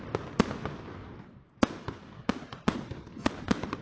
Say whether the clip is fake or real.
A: real